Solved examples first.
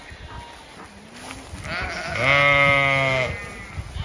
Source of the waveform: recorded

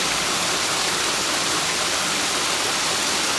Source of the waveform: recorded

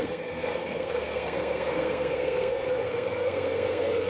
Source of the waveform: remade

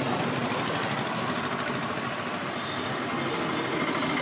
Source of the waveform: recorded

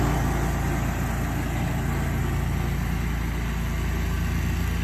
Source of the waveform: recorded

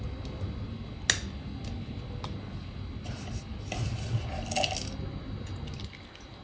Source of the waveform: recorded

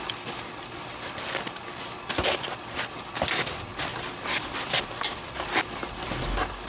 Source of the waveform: recorded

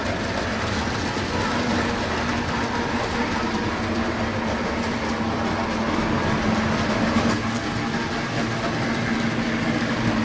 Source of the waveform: recorded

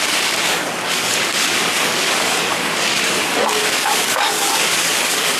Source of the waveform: remade